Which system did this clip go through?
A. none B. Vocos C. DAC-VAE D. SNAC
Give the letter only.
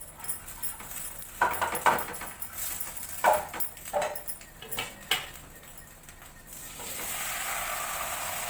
A